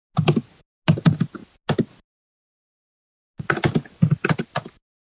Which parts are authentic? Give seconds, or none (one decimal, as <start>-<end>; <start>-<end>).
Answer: 0.0-5.2